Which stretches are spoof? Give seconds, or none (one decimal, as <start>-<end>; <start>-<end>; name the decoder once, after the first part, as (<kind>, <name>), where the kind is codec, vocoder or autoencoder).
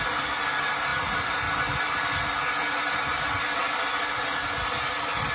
none